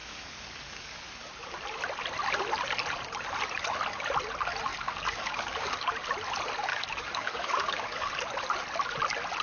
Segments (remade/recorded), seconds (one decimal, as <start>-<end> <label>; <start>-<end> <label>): 0.0-1.3 remade; 1.3-4.7 recorded; 4.7-5.9 remade; 5.9-6.7 recorded; 6.7-8.1 remade; 8.1-9.4 recorded